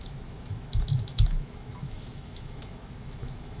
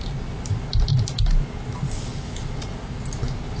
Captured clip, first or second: second